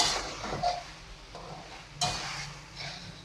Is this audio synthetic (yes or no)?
no